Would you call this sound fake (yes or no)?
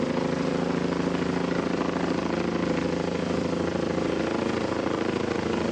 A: no